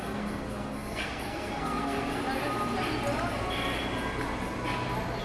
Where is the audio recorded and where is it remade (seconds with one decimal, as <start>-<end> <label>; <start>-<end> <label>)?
0.0-2.2 remade; 2.2-5.2 recorded